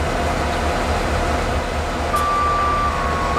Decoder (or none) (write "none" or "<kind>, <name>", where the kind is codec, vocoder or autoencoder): none